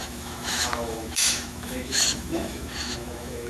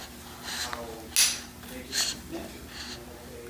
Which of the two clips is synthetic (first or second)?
first